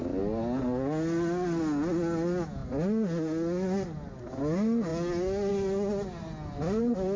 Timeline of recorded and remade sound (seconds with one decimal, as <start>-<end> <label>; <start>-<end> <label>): 0.0-7.2 recorded